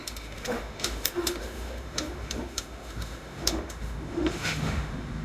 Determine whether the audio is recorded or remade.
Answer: remade